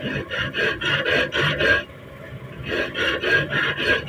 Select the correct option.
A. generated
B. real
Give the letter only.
B